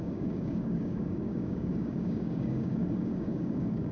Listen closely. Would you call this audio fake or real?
fake